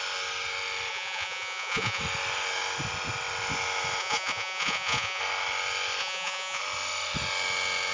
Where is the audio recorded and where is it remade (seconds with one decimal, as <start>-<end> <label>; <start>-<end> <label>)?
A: 0.0-0.9 recorded; 0.9-2.0 remade; 2.0-4.0 recorded; 4.0-5.2 remade; 5.2-6.0 recorded; 6.0-6.6 remade; 6.6-7.9 recorded